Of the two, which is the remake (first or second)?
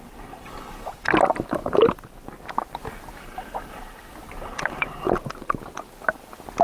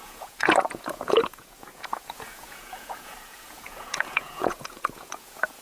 second